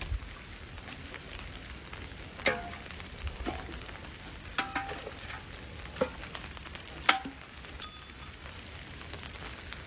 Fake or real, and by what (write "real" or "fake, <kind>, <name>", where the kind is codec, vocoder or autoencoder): real